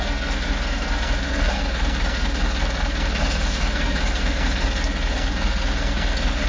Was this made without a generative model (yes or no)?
no